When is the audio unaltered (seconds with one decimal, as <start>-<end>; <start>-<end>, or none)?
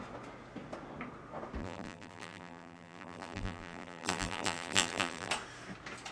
0.0-1.6; 5.3-6.1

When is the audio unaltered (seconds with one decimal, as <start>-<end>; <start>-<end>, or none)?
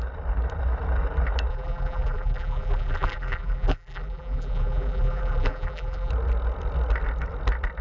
0.0-1.5; 6.1-7.8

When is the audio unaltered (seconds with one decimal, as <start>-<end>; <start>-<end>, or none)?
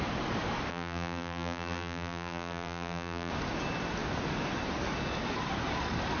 0.0-0.7; 3.3-6.2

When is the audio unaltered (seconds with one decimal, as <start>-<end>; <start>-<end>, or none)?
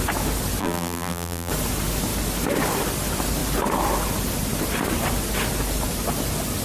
0.0-0.6; 1.5-6.6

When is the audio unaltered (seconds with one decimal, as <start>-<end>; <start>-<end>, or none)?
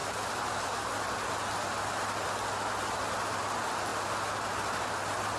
0.0-5.4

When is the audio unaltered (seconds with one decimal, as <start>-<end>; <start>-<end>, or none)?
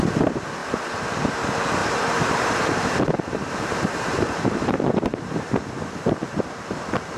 0.0-0.6; 1.2-1.8; 5.8-7.2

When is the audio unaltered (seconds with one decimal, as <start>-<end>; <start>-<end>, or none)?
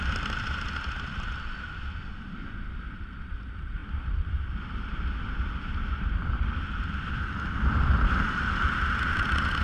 none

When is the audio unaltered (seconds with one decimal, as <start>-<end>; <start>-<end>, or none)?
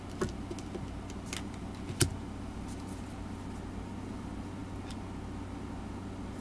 0.0-6.4